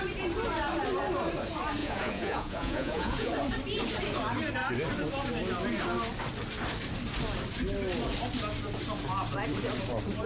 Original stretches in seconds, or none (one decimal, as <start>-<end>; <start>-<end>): 0.0-1.8; 3.3-10.3